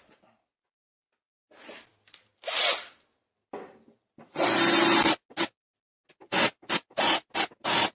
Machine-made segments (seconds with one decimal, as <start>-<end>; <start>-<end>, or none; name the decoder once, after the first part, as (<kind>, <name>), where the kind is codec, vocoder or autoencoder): none